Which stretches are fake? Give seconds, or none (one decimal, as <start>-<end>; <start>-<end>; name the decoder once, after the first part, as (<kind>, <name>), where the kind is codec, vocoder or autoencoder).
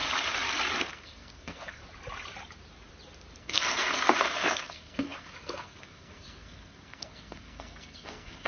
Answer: 0.9-1.8 (codec, SNAC); 3.4-8.5